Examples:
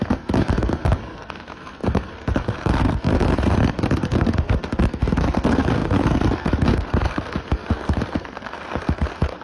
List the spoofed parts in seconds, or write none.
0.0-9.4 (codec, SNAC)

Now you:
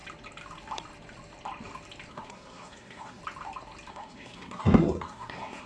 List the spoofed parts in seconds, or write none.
2.1-3.2 (codec, SNAC); 3.9-5.7

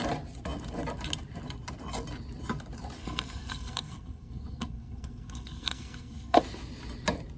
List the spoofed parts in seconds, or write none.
3.0-6.4 (codec, SNAC)

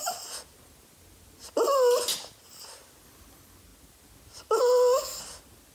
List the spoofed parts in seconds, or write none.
none